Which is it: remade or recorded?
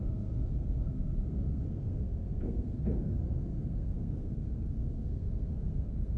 remade